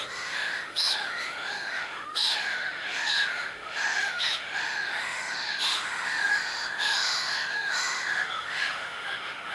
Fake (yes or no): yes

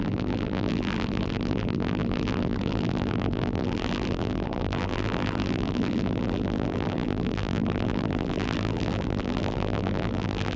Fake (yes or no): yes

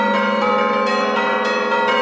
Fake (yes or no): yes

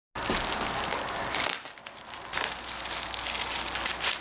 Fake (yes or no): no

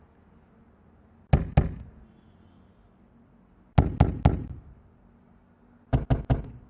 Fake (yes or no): no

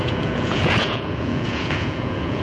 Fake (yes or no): yes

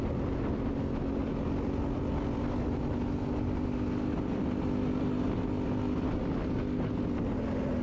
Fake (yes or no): no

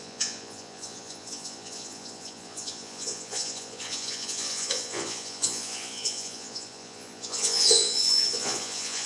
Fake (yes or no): yes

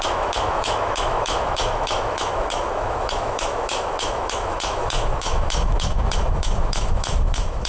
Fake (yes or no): yes